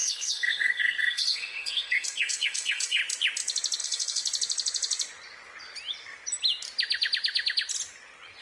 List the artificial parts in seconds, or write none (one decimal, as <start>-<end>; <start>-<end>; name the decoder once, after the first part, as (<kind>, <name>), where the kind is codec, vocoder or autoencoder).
0.0-3.0 (codec, SNAC); 3.8-4.2